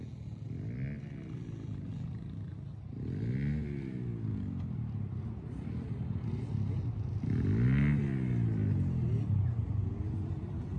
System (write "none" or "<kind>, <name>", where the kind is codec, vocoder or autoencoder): none